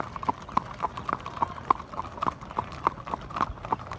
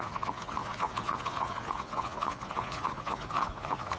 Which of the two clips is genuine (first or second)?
first